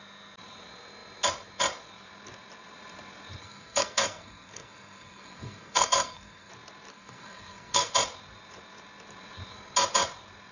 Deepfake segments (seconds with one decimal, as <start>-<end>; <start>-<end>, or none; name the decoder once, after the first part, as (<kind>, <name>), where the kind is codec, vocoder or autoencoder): 3.4-6.5 (codec, SNAC); 6.9-7.9

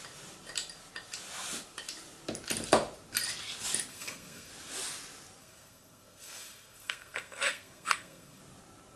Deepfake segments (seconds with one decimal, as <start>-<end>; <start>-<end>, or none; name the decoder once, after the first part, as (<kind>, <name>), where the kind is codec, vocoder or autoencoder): 3.9-4.5 (codec, SNAC); 5.4-8.4

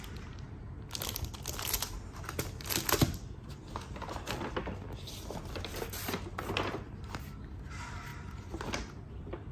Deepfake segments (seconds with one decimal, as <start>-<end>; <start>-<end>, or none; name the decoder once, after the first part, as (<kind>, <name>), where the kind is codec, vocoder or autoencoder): none

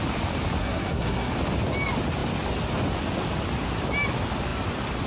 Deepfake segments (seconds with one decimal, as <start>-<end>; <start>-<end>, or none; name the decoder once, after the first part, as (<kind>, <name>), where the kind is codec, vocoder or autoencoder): 0.6-1.3 (codec, SNAC)

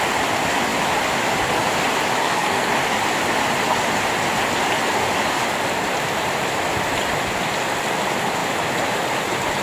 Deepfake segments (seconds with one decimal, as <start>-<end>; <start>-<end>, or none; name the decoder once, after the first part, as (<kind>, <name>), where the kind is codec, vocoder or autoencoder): 2.2-2.7 (codec, SNAC)

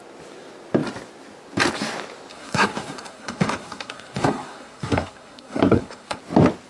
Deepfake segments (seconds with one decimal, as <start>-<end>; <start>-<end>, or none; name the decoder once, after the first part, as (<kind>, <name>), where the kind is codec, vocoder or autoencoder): 2.3-6.2 (codec, SNAC)

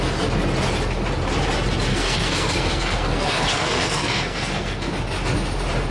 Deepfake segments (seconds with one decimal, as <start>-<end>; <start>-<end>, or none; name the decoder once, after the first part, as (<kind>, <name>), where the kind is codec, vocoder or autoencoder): 1.9-4.9 (codec, SNAC)

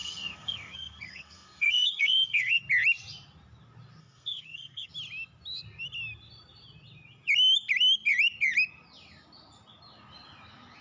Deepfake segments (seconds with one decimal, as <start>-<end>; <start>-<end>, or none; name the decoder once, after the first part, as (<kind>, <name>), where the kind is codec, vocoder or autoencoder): 0.0-2.6 (codec, SNAC); 4.0-4.9